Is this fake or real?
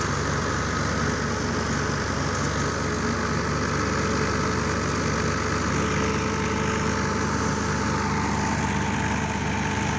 real